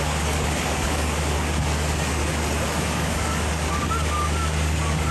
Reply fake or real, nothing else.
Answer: fake